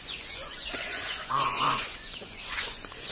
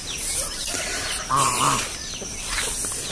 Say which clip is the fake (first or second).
first